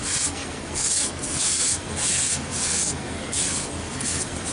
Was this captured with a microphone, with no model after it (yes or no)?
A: no